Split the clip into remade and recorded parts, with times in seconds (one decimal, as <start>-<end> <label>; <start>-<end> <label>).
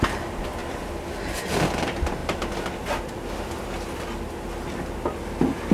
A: 0.0-5.7 recorded